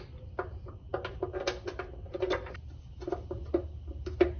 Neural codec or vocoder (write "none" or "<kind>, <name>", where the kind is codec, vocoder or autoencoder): none